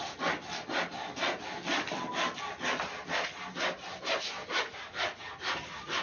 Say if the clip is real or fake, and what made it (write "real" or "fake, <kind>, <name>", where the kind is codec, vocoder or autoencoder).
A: real